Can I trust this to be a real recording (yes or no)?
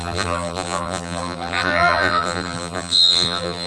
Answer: no